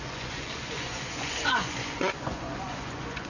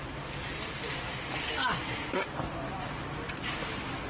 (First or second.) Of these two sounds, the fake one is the first